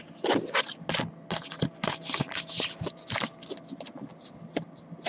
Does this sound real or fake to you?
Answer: real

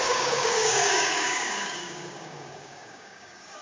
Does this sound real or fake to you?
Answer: fake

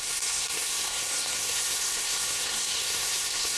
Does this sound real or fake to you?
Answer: fake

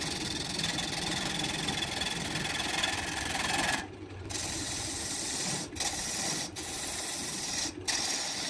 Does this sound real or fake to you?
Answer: real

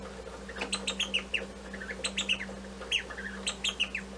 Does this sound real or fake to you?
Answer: real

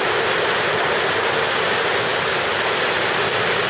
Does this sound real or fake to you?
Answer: real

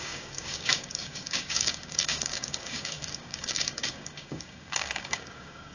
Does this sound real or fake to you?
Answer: fake